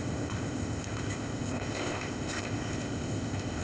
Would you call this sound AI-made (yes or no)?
yes